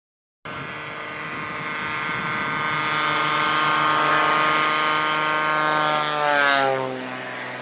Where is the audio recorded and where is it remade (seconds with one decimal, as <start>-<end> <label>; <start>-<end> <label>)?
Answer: 0.0-7.6 recorded